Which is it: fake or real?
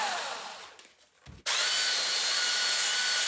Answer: real